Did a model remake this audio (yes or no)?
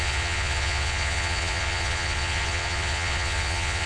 yes